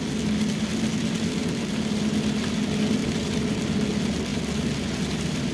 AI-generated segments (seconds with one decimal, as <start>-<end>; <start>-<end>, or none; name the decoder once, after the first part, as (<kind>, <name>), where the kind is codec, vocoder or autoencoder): 3.0-3.7 (vocoder, BigVGAN v2)